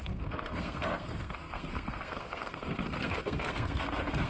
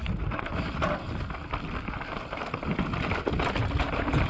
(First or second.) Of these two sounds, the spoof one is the first